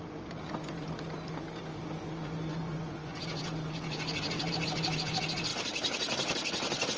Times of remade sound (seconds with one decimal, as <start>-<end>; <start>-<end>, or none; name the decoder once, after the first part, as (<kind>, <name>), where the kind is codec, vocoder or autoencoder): 2.5-3.2 (vocoder, Vocos)